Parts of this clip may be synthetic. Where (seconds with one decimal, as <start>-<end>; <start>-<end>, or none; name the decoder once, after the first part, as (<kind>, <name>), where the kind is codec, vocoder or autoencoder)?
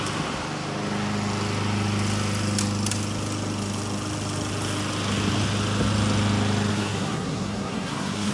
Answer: 6.7-8.3 (codec, SNAC)